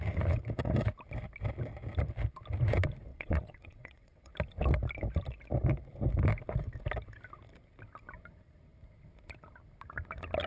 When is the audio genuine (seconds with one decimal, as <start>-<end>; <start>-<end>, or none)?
0.0-3.1; 4.3-10.5